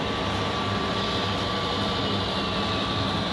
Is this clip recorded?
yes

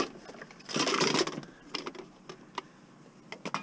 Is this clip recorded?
yes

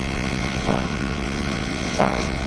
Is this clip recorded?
no